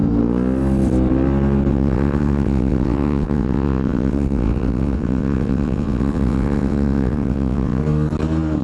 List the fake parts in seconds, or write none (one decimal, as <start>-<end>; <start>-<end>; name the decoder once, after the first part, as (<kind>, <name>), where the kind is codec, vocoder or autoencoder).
1.7-7.8 (vocoder, WaveNeXt)